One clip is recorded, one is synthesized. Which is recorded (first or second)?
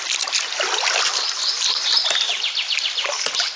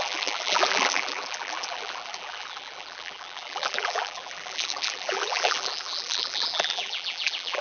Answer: first